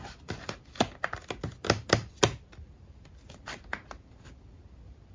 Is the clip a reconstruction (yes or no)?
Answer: yes